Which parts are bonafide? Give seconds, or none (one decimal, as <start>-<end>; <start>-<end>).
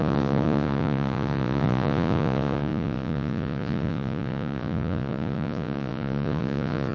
none